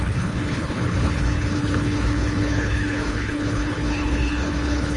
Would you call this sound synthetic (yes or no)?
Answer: yes